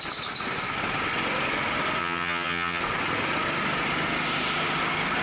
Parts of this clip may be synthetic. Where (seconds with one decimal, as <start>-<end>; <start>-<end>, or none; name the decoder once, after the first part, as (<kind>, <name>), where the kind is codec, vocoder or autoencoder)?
2.0-2.8 (vocoder, HiFi-GAN)